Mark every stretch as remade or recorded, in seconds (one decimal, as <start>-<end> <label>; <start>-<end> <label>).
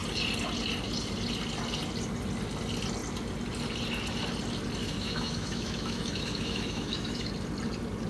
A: 0.0-4.8 recorded; 4.8-7.3 remade; 7.3-8.1 recorded